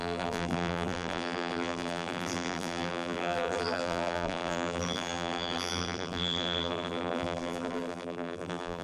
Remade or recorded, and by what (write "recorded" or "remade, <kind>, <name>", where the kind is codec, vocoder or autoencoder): remade, vocoder, BigVGAN v2